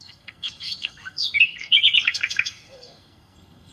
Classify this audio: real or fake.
fake